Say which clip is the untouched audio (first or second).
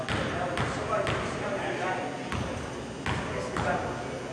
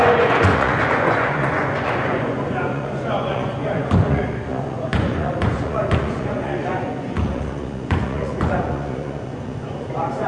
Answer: first